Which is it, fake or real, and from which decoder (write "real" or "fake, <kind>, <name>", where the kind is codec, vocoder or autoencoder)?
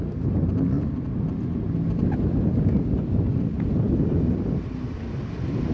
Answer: real